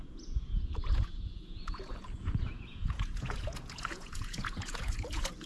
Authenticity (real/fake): fake